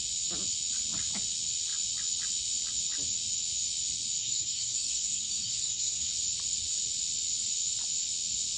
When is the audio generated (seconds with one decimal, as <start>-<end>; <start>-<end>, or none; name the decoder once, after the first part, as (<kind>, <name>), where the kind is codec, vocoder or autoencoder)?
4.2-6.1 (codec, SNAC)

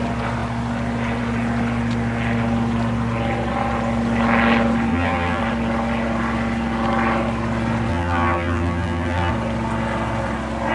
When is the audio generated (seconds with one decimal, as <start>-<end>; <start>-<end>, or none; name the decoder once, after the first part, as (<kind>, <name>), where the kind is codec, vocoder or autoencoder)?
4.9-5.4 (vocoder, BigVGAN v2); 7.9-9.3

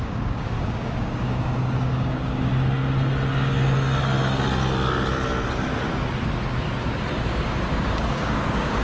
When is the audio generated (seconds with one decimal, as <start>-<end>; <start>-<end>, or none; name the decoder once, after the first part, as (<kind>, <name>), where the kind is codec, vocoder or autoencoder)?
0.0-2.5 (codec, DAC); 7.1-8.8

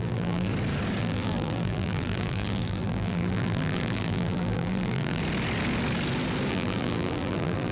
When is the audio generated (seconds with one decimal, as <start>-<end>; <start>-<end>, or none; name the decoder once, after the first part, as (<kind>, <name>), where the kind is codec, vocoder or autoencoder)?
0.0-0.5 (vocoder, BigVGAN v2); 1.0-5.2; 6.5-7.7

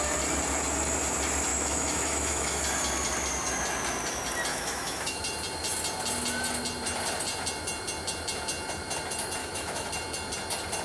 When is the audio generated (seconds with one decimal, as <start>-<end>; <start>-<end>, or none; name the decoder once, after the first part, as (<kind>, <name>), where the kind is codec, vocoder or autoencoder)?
1.5-2.6 (autoencoder, DAC-VAE); 4.5-5.2; 9.4-9.9

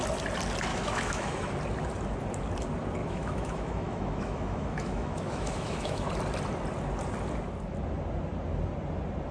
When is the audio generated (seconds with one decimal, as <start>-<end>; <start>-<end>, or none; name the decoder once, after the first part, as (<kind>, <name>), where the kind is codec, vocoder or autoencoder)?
0.7-1.5 (autoencoder, DAC-VAE); 3.0-6.1

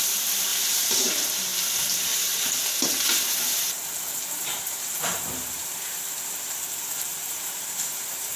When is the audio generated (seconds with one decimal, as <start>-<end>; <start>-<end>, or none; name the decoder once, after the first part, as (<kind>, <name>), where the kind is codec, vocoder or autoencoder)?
0.0-1.5 (vocoder, BigVGAN v2); 4.4-8.4

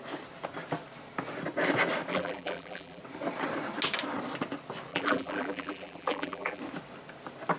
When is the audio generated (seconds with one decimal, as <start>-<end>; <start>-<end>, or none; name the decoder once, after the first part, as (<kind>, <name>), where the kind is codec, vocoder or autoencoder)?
2.1-3.0 (vocoder, BigVGAN v2); 4.9-6.6